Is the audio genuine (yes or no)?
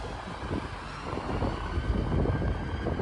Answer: yes